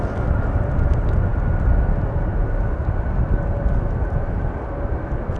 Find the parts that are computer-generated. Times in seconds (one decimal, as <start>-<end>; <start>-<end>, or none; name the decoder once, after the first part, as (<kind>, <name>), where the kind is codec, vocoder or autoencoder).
none